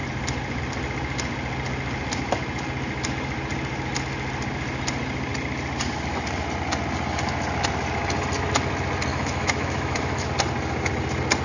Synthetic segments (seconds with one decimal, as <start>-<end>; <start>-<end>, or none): 9.1-10.3